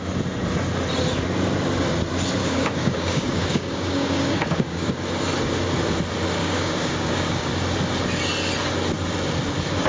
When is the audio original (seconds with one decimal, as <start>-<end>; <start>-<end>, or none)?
0.0-2.4; 4.9-6.4; 7.5-9.9